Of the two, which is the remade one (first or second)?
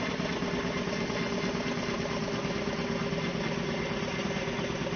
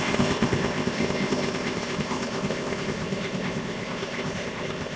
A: second